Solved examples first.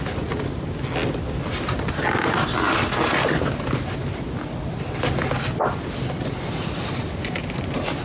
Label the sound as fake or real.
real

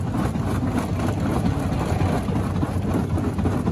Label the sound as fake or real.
real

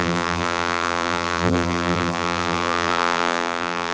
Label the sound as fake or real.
fake